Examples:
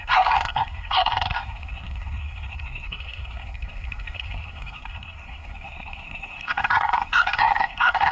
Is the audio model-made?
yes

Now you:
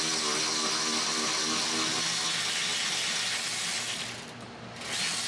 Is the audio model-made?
no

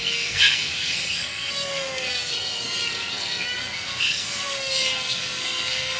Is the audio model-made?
yes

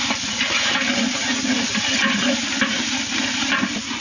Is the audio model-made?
no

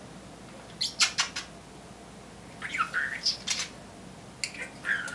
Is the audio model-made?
no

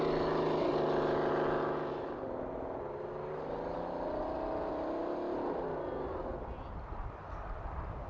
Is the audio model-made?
no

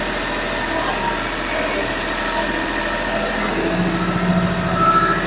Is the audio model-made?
no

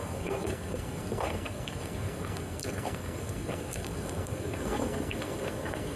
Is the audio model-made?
yes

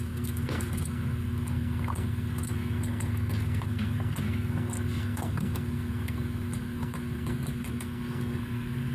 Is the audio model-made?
yes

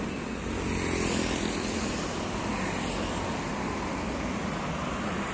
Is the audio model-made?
no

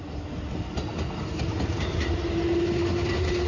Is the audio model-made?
no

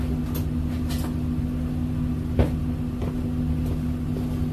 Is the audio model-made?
no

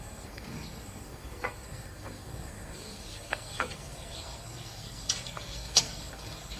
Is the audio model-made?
yes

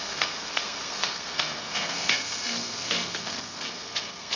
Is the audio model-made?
yes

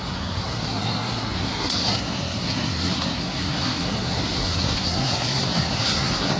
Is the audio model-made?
yes